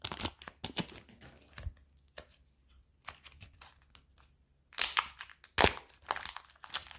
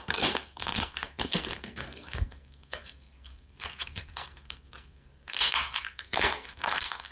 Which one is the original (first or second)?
first